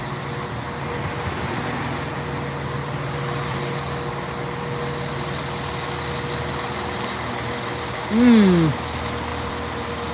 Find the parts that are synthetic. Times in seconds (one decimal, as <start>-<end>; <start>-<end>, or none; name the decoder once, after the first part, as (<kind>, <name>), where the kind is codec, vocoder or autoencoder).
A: none